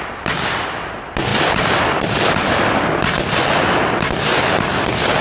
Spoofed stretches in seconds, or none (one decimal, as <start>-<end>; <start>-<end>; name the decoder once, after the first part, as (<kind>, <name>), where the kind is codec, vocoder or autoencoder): 1.3-3.0 (vocoder, BigVGAN v2)

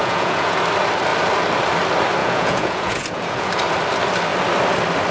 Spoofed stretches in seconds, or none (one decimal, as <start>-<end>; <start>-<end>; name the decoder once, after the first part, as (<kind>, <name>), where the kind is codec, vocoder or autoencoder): 0.0-0.6 (vocoder, Vocos); 2.2-3.5

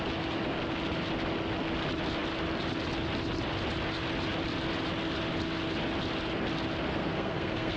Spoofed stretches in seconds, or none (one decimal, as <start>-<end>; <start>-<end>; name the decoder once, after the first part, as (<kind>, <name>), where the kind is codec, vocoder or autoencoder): 6.9-7.8 (codec, SNAC)

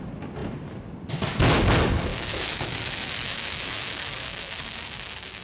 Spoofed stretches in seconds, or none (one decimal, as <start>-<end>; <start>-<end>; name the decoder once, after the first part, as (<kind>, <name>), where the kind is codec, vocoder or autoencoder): 2.1-5.4 (autoencoder, DAC-VAE)

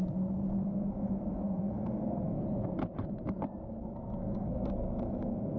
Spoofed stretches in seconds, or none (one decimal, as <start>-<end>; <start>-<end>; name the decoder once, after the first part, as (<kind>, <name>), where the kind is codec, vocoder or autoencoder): 0.6-2.4 (codec, SNAC); 3.8-5.6

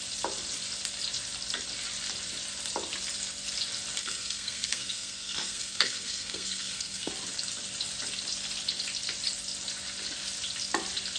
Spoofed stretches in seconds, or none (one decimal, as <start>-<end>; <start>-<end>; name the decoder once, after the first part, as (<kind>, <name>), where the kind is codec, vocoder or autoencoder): 4.0-7.1 (codec, SNAC)